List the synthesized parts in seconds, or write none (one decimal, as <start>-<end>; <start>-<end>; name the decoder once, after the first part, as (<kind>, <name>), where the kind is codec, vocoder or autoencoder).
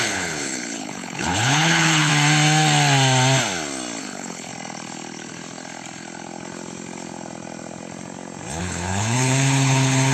0.0-2.1 (codec, HILCodec); 4.0-4.5; 8.6-10.1